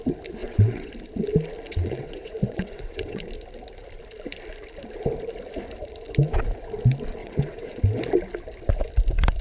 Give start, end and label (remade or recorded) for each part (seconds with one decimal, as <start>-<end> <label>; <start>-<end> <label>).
0.0-0.4 recorded; 0.4-0.9 remade; 0.9-1.7 recorded; 1.7-3.2 remade; 3.2-7.2 recorded; 7.2-7.8 remade; 7.8-9.4 recorded